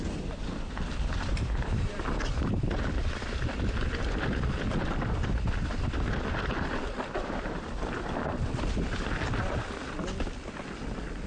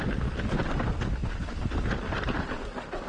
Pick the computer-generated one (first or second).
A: first